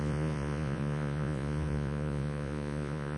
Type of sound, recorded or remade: remade